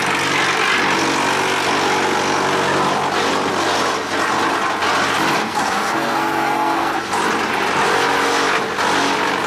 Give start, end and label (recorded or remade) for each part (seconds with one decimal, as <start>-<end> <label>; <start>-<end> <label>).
0.0-5.4 recorded; 5.4-7.0 remade; 7.0-9.5 recorded